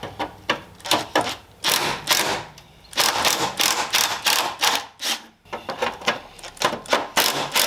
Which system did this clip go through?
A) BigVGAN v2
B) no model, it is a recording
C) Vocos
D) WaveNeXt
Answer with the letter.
A